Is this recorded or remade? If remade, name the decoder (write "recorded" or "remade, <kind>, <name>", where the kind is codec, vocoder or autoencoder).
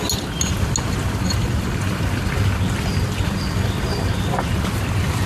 recorded